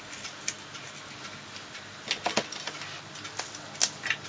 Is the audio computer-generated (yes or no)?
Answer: no